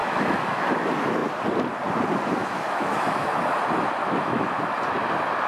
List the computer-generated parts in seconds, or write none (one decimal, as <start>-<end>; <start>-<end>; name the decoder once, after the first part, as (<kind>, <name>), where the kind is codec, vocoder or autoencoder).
0.0-0.7 (autoencoder, DAC-VAE); 2.4-3.3; 4.0-4.8